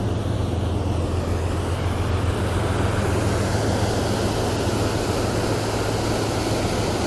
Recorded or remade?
recorded